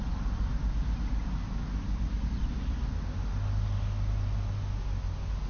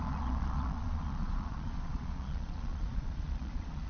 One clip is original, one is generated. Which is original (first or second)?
first